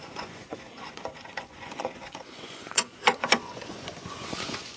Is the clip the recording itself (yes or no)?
no